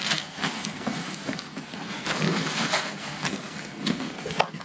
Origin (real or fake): fake